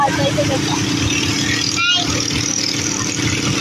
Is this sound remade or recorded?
recorded